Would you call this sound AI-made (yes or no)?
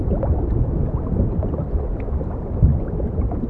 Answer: no